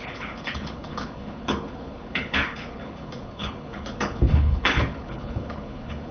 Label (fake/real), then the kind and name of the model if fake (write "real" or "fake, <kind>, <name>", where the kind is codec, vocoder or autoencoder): fake, codec, HILCodec